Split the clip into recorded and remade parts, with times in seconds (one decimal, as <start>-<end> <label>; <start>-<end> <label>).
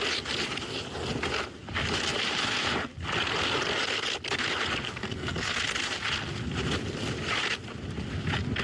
0.0-5.0 recorded; 5.0-5.6 remade; 5.6-8.6 recorded